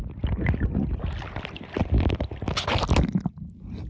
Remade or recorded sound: recorded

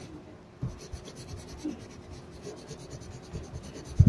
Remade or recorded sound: recorded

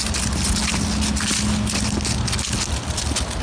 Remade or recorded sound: recorded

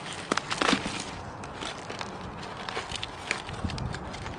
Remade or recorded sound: recorded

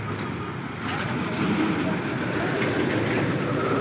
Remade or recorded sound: recorded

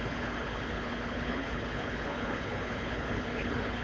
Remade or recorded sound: remade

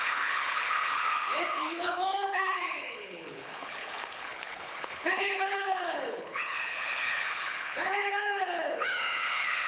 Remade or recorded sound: remade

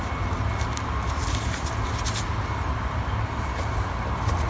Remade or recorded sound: recorded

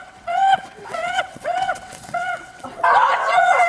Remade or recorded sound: remade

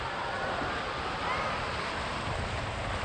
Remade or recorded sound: recorded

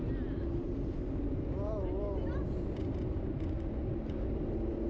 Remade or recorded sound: recorded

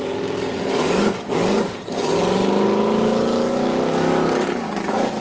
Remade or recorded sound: remade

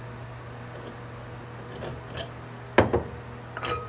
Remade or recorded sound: recorded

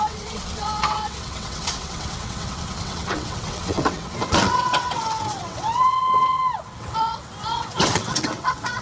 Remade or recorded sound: remade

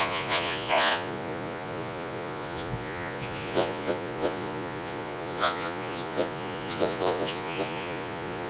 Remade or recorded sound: remade